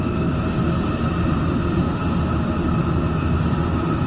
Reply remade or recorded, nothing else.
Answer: recorded